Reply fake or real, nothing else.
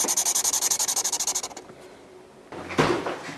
real